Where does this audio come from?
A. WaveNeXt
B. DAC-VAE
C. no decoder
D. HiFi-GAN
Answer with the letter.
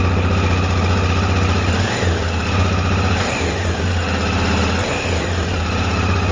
C